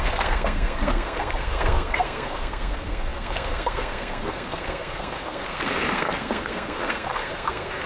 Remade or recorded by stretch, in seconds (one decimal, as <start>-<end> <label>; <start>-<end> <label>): 0.0-7.9 remade

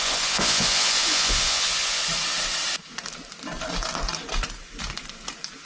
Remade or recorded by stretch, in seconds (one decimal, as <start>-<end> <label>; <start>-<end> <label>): 0.0-2.0 remade; 2.0-5.7 recorded

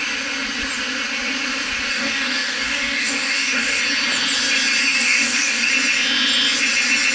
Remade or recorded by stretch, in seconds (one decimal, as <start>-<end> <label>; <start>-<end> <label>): 0.0-1.9 recorded; 1.9-3.8 remade; 3.8-4.8 recorded; 4.8-5.7 remade; 5.7-7.1 recorded

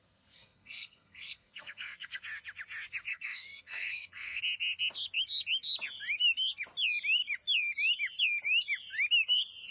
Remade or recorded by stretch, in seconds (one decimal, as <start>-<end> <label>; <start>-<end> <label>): 0.0-2.2 remade; 2.2-3.1 recorded; 3.1-4.4 remade; 4.4-9.7 recorded

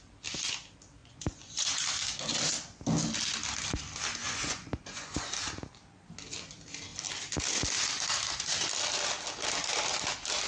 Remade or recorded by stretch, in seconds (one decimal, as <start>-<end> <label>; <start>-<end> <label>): 0.0-1.0 recorded; 1.0-1.8 remade; 1.8-4.2 recorded; 4.2-5.3 remade; 5.3-10.5 recorded